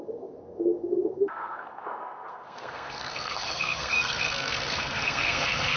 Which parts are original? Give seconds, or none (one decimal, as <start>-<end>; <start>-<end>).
none